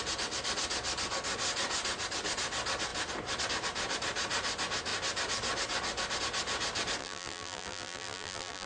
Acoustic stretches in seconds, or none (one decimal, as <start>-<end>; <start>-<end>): 0.0-7.0